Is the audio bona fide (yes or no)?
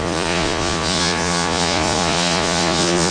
no